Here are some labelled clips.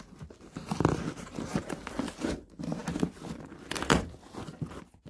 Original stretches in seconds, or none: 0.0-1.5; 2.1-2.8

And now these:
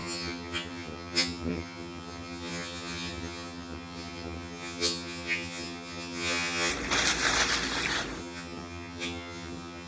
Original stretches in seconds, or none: 6.7-8.2

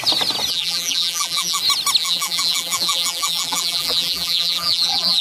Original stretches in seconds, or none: 0.0-0.5; 1.6-2.0

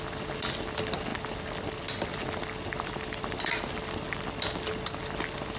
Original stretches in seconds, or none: 0.0-5.6